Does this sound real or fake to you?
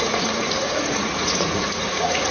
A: fake